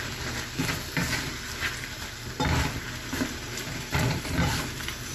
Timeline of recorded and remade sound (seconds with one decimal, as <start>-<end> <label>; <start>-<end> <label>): 0.0-0.6 remade; 0.6-3.7 recorded; 3.7-5.1 remade